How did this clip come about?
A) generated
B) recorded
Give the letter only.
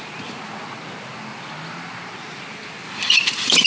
B